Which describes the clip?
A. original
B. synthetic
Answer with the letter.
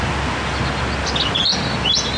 A